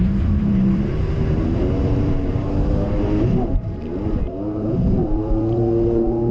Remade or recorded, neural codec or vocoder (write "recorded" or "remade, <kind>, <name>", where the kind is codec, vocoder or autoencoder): remade, vocoder, BigVGAN v2